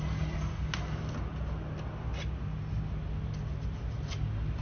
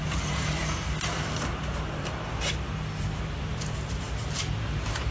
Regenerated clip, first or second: second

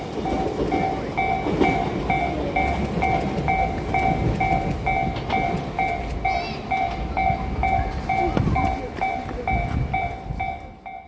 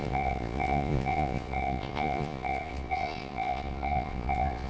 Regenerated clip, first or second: second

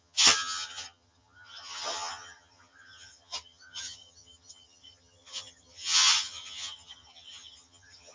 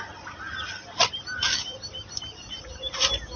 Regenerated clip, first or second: first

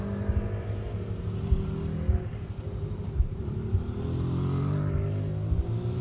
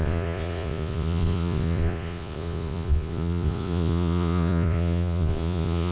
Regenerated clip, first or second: second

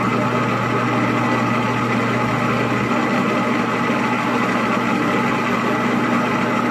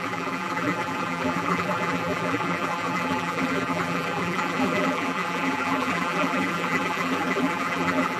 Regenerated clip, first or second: second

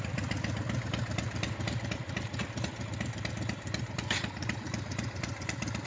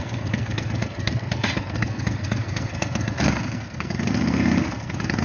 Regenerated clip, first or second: second